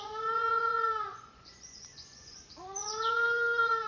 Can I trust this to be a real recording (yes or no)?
no